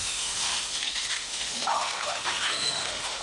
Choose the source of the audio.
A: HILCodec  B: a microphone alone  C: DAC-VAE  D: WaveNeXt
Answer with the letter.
C